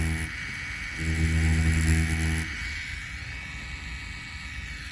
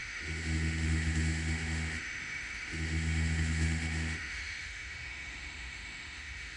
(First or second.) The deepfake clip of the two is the second